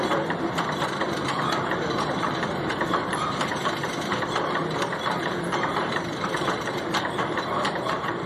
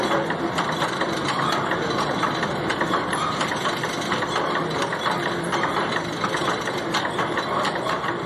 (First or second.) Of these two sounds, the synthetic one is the first